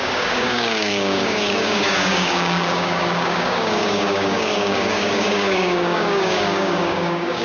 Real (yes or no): no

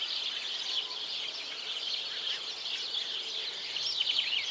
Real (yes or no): yes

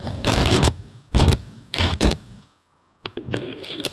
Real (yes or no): no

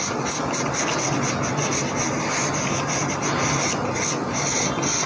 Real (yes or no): yes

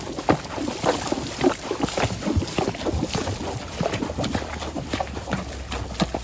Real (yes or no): yes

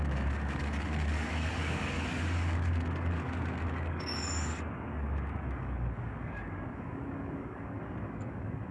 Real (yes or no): no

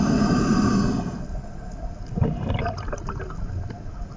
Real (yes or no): yes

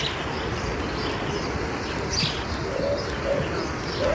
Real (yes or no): yes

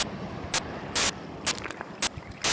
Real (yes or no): yes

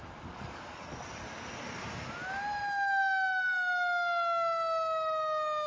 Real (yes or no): yes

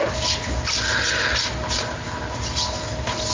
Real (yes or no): yes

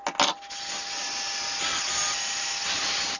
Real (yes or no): yes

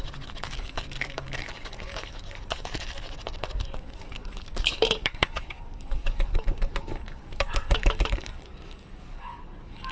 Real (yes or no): no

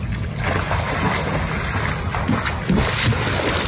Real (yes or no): yes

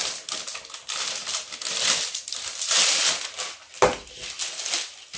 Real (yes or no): yes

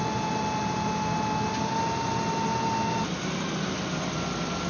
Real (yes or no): yes